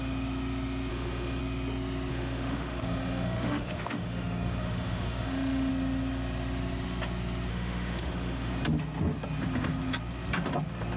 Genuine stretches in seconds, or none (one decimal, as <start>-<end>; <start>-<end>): 0.0-0.9; 1.4-2.1; 5.7-7.5; 8.5-11.0